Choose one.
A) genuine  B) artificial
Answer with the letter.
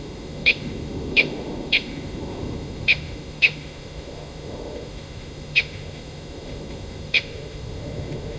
B